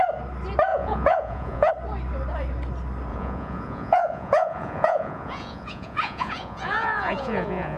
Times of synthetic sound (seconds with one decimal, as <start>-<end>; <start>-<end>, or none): 0.7-1.7; 3.1-7.8